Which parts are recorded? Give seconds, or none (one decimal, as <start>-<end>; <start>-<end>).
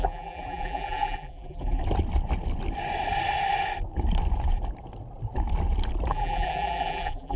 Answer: 1.8-6.1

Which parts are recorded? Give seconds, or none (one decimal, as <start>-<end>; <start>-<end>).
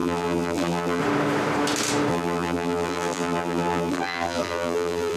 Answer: 1.0-2.1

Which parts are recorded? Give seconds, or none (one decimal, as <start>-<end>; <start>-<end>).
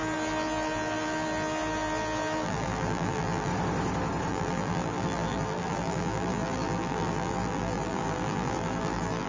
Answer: 3.5-4.3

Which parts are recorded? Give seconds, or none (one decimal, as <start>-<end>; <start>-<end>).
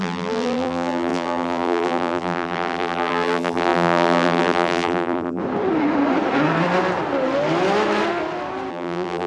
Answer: 5.4-8.7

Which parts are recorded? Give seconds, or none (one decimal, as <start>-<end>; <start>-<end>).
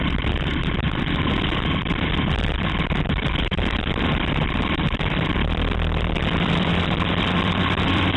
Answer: 0.5-1.0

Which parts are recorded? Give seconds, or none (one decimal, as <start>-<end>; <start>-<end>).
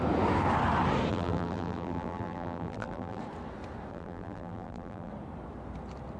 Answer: 0.0-1.1; 3.2-3.9; 5.1-6.2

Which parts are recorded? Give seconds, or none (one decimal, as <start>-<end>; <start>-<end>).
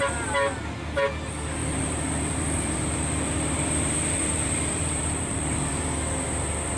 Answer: 0.0-1.6; 5.7-6.8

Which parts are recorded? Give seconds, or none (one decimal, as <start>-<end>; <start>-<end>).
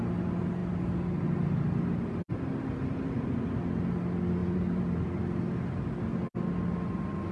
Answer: 0.0-4.4; 5.2-7.3